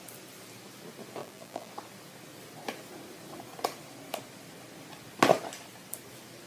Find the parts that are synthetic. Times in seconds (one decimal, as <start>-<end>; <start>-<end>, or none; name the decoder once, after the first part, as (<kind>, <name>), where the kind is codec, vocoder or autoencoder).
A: 1.2-1.7 (vocoder, BigVGAN v2)